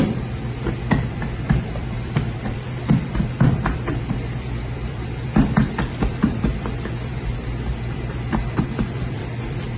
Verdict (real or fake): fake